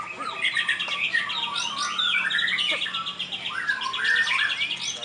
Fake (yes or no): no